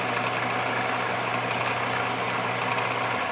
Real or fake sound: real